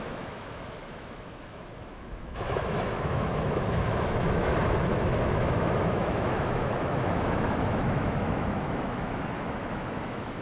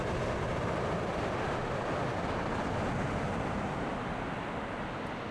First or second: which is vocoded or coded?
first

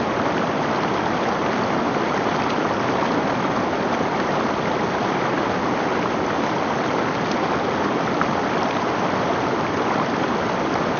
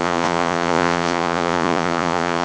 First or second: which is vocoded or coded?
second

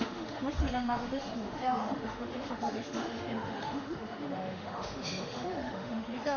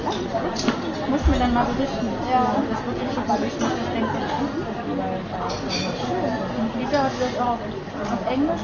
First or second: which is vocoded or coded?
first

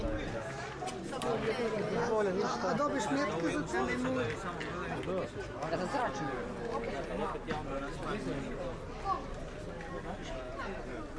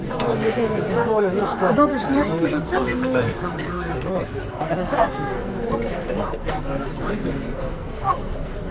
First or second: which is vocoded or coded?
second